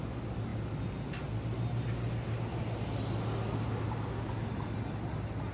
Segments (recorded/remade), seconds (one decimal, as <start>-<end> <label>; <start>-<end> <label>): 0.0-5.5 recorded